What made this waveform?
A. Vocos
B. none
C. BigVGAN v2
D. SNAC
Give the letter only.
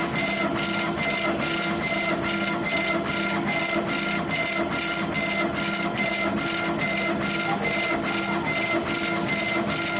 B